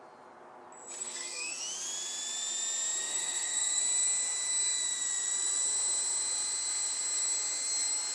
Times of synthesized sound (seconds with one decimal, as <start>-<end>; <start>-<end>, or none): 1.0-1.6; 3.0-3.8